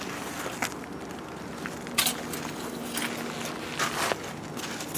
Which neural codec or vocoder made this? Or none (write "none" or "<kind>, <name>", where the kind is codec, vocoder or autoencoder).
none